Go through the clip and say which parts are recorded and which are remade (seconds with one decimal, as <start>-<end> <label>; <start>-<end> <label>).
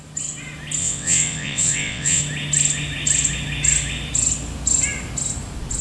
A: 0.0-0.8 recorded; 0.8-2.2 remade; 2.2-5.8 recorded